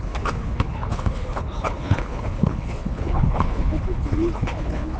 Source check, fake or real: fake